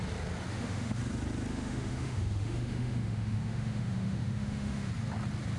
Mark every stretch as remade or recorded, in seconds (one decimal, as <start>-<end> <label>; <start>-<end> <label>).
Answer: 0.0-0.5 recorded; 0.5-1.0 remade; 1.0-1.5 recorded; 1.5-4.9 remade; 4.9-5.6 recorded